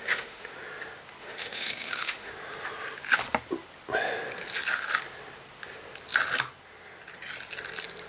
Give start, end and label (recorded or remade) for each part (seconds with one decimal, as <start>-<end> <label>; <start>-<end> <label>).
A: 0.0-0.5 remade; 0.5-1.2 recorded; 1.2-2.3 remade; 2.3-8.1 recorded